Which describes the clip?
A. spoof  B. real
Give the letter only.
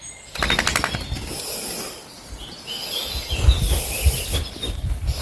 B